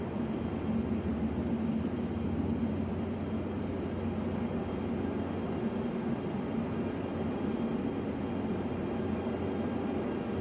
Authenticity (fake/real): real